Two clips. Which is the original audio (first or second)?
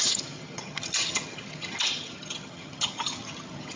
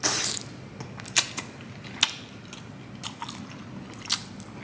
second